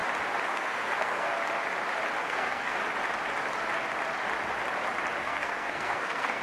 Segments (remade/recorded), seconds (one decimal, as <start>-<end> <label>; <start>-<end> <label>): 0.0-0.5 recorded; 0.5-1.3 remade; 1.3-2.2 recorded; 2.2-2.8 remade; 2.8-5.2 recorded; 5.2-6.4 remade